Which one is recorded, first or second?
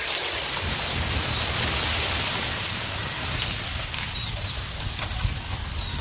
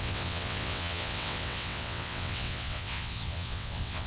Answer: first